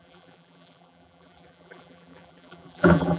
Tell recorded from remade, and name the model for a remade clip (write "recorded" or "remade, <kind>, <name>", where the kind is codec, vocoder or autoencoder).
remade, vocoder, BigVGAN v2